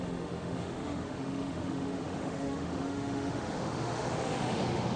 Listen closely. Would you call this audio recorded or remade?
remade